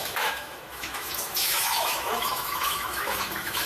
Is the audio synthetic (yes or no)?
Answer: yes